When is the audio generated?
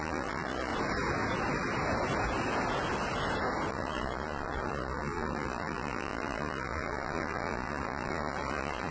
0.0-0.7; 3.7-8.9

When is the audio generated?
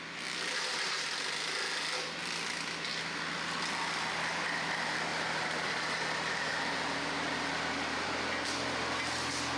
5.1-7.3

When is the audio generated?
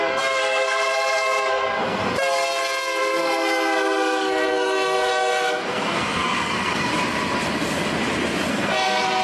0.0-2.0; 3.0-6.9; 8.5-9.2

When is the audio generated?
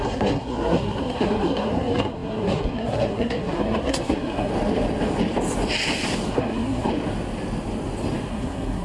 0.0-4.5; 6.3-6.9; 8.3-8.8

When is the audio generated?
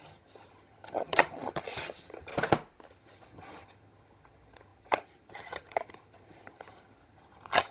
0.0-2.3; 2.9-7.7